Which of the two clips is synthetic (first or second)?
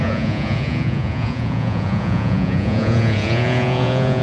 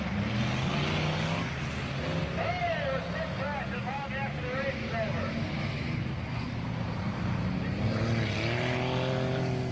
first